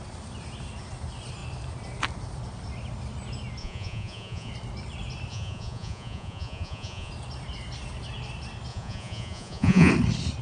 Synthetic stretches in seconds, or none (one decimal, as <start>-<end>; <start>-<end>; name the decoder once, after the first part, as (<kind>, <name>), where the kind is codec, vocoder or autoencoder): 3.6-4.5 (vocoder, Vocos); 5.3-7.1; 8.7-9.9